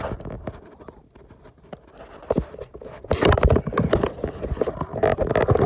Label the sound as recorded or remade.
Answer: recorded